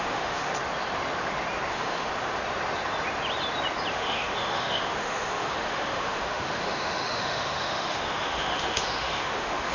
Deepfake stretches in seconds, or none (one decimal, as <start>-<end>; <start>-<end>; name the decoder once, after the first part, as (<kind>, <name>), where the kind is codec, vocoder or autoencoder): 0.0-0.5 (autoencoder, DAC-VAE); 1.7-2.1; 3.9-9.7